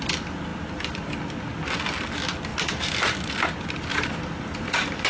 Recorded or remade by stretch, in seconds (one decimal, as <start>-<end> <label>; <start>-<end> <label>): 0.0-2.5 recorded; 2.5-3.3 remade; 3.3-3.9 recorded; 3.9-5.1 remade